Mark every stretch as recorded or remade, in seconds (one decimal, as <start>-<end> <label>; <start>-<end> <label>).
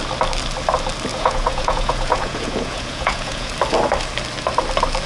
0.0-1.1 recorded; 1.1-3.5 remade; 3.5-5.1 recorded